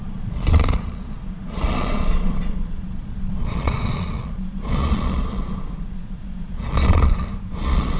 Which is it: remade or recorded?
remade